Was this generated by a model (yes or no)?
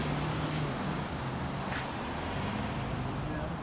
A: no